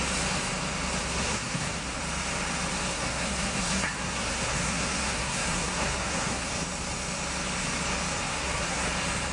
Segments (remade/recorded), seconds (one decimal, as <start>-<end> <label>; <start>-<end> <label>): 0.0-1.0 recorded; 1.0-2.0 remade; 2.0-2.9 recorded; 2.9-6.5 remade; 6.5-8.3 recorded; 8.3-8.9 remade; 8.9-9.3 recorded